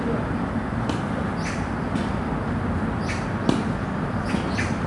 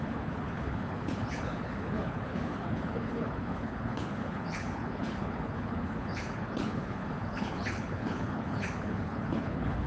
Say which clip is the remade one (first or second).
second